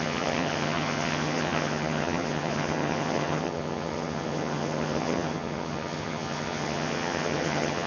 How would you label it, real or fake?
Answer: fake